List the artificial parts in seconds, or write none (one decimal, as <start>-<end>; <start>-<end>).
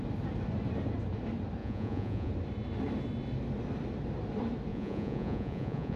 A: 1.6-2.3; 4.7-6.0